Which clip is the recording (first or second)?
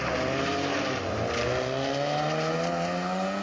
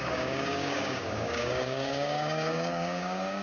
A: first